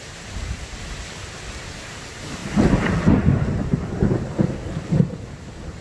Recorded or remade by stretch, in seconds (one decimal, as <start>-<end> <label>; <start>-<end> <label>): 0.0-5.8 remade